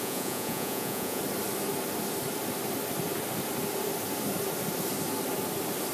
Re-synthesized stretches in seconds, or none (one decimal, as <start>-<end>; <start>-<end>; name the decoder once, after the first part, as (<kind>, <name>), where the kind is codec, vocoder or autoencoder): 0.0-1.2 (vocoder, Vocos)

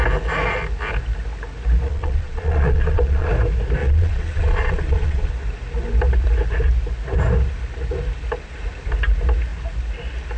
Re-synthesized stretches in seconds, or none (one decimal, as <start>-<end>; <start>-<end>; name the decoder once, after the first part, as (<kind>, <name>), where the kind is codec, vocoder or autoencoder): 1.9-3.3 (vocoder, Vocos); 3.8-5.3